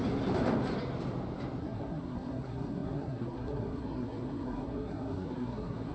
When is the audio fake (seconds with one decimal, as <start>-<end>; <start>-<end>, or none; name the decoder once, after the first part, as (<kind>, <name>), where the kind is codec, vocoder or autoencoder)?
1.6-5.9 (codec, SNAC)